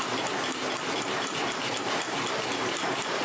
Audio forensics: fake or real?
real